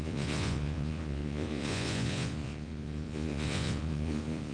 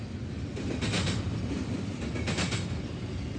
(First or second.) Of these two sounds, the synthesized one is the first